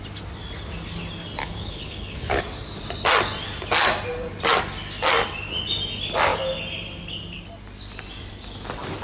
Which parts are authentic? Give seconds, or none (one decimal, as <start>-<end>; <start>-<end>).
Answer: 0.0-1.4; 2.4-9.0

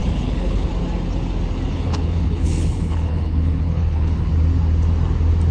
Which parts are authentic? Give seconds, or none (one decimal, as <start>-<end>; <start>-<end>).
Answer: 0.7-1.7; 4.3-5.5

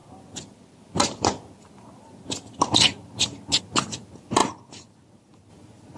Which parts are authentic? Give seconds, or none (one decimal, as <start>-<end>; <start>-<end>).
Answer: 0.0-6.0

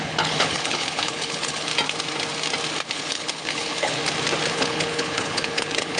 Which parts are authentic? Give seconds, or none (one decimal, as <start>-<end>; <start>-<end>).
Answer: 1.7-2.9; 4.0-4.5

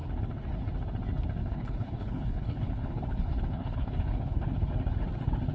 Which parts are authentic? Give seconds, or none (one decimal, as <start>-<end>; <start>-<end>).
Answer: 0.0-1.4; 4.7-5.5